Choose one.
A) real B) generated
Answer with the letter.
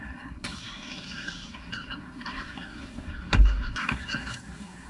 B